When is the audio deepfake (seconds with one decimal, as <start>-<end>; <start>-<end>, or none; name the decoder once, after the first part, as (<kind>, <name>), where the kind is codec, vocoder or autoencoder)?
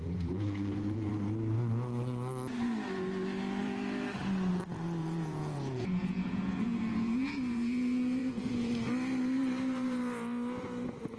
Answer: 0.0-1.1 (vocoder, Vocos); 5.0-8.7